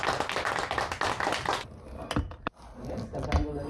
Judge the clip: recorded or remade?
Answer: recorded